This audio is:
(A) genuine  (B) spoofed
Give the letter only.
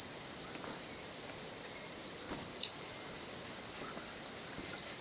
B